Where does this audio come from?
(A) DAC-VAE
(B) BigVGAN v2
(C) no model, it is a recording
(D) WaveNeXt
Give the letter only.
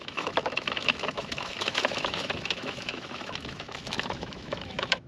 A